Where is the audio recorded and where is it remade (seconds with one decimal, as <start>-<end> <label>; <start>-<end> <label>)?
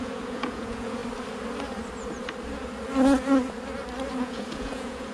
0.0-1.0 remade; 1.0-4.1 recorded; 4.1-5.1 remade